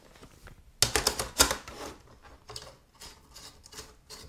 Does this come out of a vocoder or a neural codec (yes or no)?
no